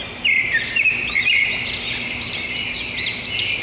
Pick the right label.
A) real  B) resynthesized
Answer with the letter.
B